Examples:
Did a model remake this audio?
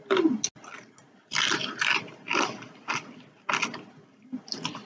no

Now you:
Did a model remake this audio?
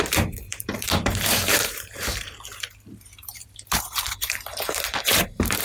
yes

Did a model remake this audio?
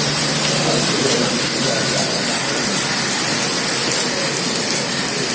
no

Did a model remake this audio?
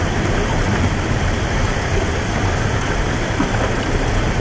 yes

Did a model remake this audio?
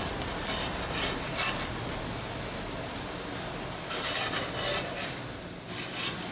no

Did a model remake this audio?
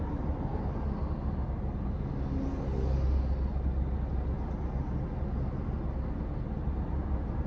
no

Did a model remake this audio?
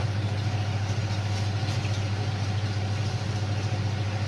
no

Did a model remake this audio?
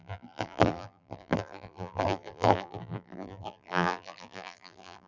yes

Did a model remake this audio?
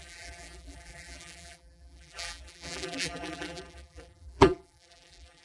yes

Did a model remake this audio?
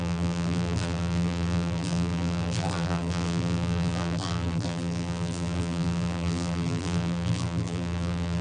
yes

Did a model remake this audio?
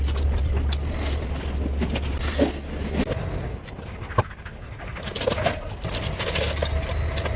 no